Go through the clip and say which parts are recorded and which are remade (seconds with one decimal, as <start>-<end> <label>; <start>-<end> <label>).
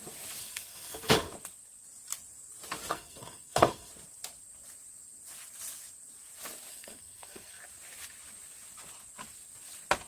0.0-0.4 recorded; 0.4-1.3 remade; 1.3-2.9 recorded; 2.9-3.9 remade; 3.9-6.7 recorded; 6.7-7.6 remade; 7.6-10.1 recorded